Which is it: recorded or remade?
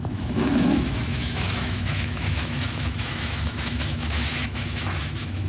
remade